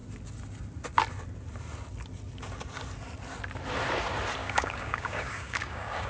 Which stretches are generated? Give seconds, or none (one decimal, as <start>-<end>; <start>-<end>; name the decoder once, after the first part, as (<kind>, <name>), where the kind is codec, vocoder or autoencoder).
4.4-6.1 (codec, DAC)